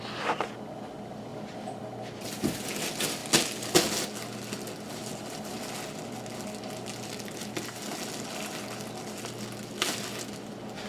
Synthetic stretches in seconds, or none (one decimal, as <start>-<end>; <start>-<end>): 1.3-1.8; 5.0-5.6

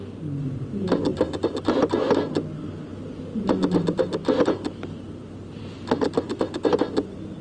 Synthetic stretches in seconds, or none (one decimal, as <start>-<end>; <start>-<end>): none

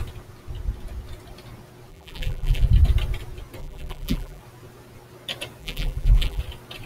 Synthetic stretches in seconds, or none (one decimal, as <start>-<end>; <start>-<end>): 1.9-2.7; 3.6-4.4; 5.6-6.4

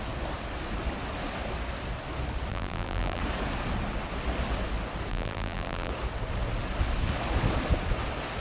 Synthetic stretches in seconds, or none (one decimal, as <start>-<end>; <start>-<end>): 2.5-3.2; 5.1-5.9